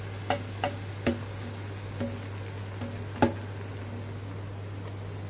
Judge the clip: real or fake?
real